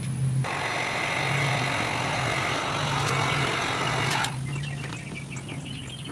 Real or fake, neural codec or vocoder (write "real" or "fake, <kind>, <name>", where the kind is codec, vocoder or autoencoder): real